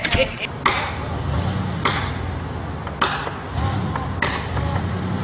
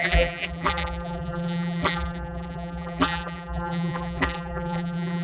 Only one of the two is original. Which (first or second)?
first